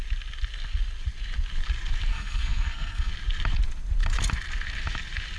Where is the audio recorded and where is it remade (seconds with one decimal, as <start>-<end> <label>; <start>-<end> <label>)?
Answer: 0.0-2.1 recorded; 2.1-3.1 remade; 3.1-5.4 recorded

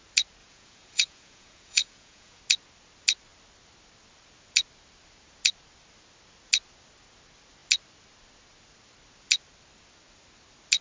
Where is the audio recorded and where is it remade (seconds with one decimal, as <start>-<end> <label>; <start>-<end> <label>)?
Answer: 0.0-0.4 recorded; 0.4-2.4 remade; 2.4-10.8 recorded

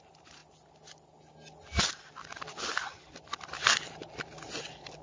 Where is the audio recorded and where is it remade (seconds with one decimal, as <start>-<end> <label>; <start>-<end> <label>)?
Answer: 0.0-0.4 remade; 0.4-2.1 recorded; 2.1-5.0 remade